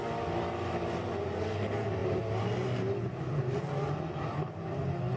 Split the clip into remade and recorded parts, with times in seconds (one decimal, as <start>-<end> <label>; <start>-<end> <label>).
0.0-5.2 recorded